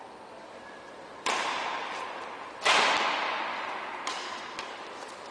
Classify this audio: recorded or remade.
remade